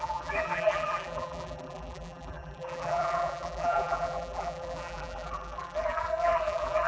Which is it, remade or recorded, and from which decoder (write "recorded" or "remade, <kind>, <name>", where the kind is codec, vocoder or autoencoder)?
remade, vocoder, BigVGAN v2